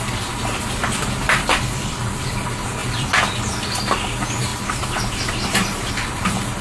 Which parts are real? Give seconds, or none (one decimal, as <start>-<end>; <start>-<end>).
0.0-0.8; 2.4-2.8; 3.5-4.5; 5.9-6.6